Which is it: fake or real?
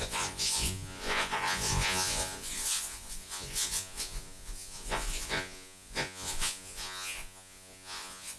fake